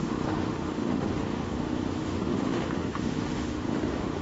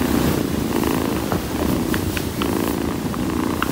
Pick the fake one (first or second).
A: first